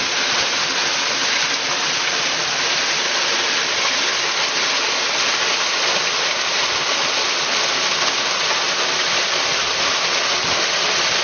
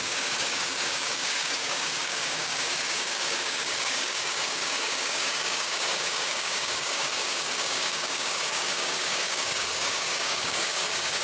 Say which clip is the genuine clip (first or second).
first